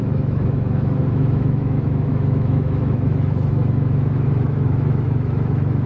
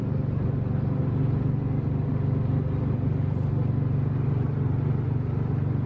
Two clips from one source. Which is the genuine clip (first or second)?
second